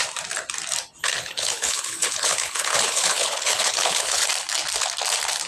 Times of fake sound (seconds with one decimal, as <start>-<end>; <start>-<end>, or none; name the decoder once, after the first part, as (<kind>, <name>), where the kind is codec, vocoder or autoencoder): 1.0-4.3 (codec, HILCodec)